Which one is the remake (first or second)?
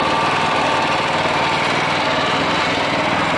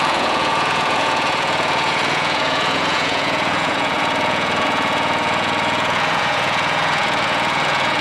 second